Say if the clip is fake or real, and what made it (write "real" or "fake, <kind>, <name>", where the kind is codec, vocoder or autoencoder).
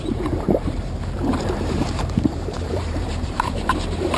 fake, vocoder, BigVGAN v2